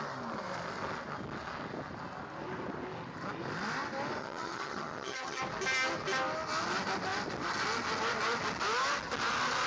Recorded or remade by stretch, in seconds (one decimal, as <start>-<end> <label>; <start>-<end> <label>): 0.0-4.2 recorded; 4.2-5.4 remade; 5.4-9.7 recorded